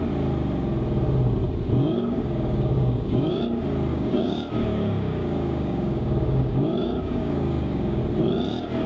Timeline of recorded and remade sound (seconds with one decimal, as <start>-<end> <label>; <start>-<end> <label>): 0.0-1.8 recorded; 1.8-3.4 remade; 3.4-3.9 recorded; 3.9-8.0 remade; 8.0-8.9 recorded

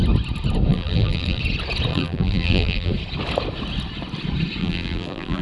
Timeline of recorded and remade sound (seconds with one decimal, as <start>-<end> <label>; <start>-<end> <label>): 0.0-0.7 recorded; 0.7-1.4 remade; 1.4-1.9 recorded; 1.9-2.9 remade; 2.9-4.6 recorded; 4.6-5.4 remade

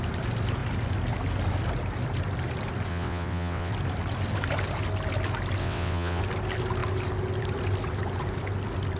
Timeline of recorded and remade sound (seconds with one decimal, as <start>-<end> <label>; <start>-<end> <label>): 0.0-2.9 recorded; 2.9-3.7 remade; 3.7-5.6 recorded; 5.6-6.2 remade; 6.2-9.0 recorded

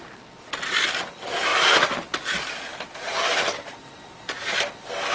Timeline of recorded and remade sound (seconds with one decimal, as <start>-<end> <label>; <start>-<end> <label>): 0.0-5.1 recorded

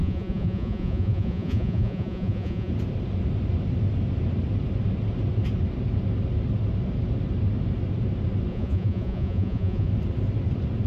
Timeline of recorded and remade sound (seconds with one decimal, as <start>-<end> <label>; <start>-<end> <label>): 0.0-2.7 remade; 2.7-8.5 recorded; 8.5-9.9 remade; 9.9-10.9 recorded

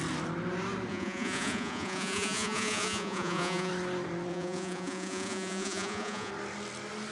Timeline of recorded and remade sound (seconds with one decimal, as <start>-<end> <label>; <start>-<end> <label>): 0.0-0.9 recorded; 0.9-3.7 remade; 3.7-4.3 recorded; 4.3-6.3 remade; 6.3-7.1 recorded